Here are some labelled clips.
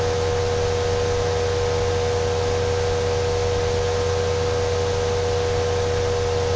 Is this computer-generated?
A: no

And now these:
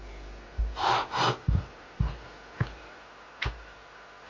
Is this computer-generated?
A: no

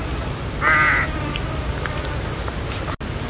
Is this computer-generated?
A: no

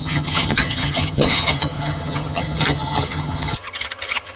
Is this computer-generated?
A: yes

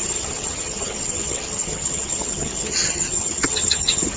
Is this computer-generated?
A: yes